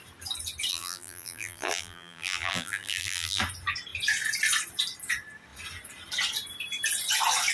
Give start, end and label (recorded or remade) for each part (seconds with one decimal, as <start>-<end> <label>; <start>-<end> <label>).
0.0-0.7 recorded; 0.7-3.4 remade; 3.4-7.5 recorded